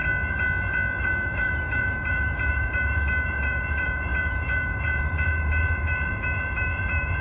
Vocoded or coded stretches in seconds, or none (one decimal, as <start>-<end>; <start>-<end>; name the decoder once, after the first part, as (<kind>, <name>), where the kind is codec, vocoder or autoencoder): 1.0-7.2 (vocoder, BigVGAN v2)